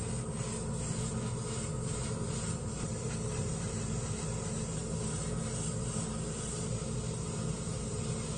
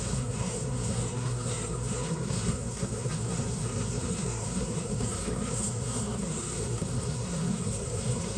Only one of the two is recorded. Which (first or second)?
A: first